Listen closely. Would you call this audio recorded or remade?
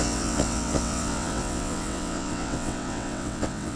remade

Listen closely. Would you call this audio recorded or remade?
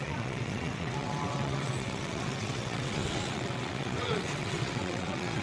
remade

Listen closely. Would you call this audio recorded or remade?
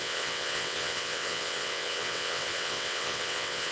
remade